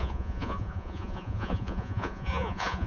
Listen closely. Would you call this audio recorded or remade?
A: remade